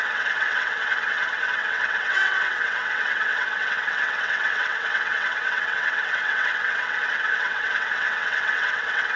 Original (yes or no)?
no